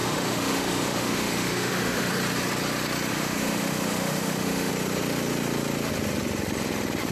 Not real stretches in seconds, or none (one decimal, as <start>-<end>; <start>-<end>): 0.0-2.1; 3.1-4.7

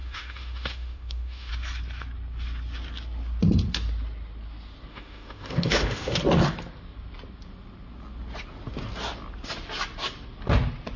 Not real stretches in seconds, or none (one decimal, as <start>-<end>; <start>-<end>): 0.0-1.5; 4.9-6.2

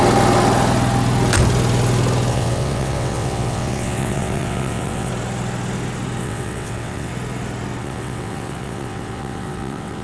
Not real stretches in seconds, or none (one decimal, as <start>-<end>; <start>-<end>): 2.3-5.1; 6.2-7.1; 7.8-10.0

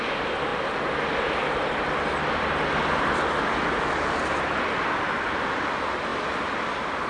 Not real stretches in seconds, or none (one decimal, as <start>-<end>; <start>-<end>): 6.1-7.1